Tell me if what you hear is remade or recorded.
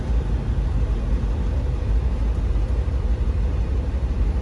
remade